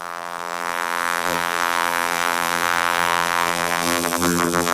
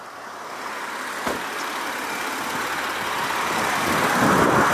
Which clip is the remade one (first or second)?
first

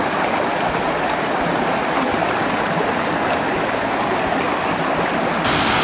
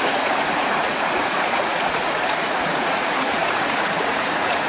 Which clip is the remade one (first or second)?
second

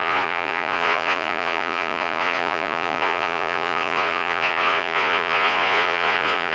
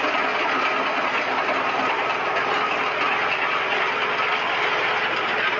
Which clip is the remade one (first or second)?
first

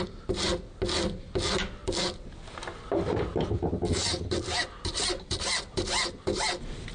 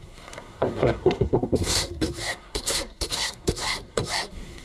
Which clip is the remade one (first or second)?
second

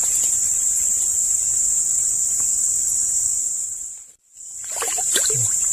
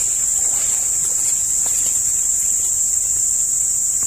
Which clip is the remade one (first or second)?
first